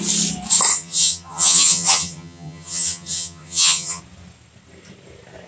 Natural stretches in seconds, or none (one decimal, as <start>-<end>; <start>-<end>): 0.0-0.7; 4.0-5.5